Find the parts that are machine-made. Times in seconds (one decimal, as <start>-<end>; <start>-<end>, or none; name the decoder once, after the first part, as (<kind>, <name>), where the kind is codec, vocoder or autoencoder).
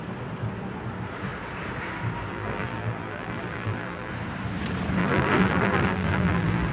2.3-4.1 (vocoder, BigVGAN v2); 5.0-6.7